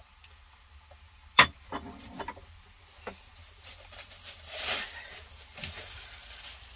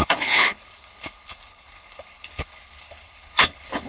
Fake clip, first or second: second